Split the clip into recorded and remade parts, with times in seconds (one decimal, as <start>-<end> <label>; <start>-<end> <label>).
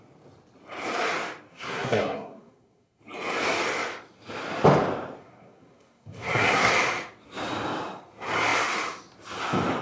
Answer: 0.0-1.5 recorded; 1.5-3.0 remade; 3.0-5.2 recorded; 5.2-6.7 remade; 6.7-9.8 recorded